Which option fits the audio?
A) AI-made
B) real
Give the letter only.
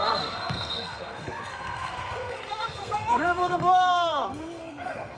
A